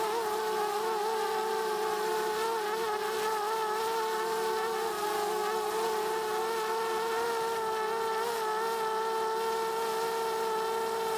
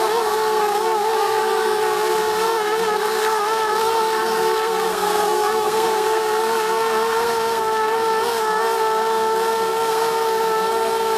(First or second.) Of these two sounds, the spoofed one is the second